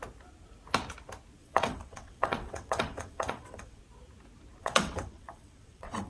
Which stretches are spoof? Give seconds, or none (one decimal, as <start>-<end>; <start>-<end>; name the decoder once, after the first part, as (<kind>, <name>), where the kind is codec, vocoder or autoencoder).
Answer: 1.4-3.8 (vocoder, WaveNeXt); 4.6-6.1